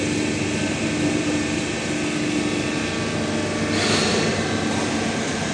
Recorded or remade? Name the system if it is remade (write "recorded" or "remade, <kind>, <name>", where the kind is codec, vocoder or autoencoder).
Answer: recorded